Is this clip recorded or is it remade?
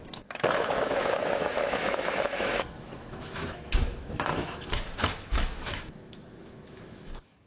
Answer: remade